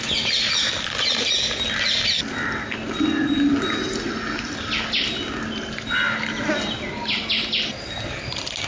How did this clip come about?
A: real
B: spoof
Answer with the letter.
A